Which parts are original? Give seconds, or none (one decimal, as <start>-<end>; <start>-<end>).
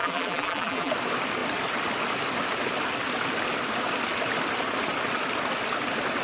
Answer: 0.9-6.2